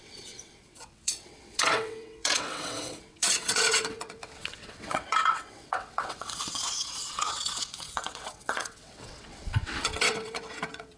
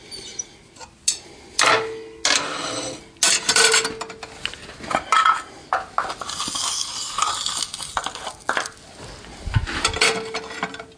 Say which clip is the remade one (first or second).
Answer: first